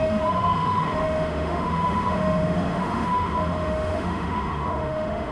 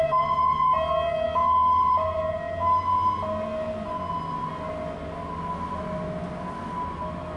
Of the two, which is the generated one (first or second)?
first